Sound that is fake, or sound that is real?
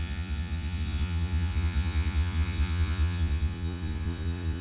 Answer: fake